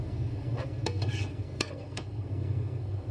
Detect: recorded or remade remade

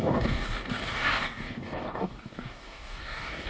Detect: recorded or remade remade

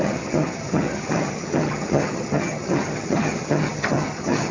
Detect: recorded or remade remade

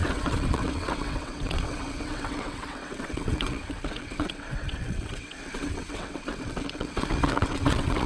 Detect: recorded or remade remade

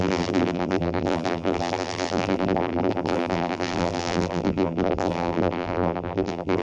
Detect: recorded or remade remade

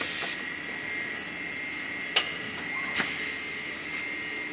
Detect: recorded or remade recorded